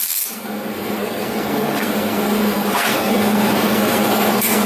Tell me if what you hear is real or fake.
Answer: fake